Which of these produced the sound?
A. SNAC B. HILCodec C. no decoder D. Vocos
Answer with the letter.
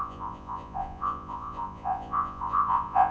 D